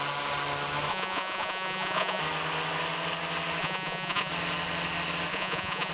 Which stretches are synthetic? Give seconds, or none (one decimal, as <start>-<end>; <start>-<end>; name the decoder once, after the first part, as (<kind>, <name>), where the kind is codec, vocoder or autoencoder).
0.9-2.2 (vocoder, Vocos); 3.6-4.3; 5.3-5.9

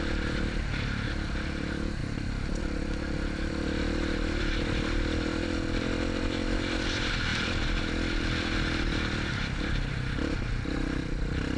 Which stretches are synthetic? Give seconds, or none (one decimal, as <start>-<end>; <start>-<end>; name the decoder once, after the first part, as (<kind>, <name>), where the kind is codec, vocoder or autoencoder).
0.0-11.6 (vocoder, BigVGAN v2)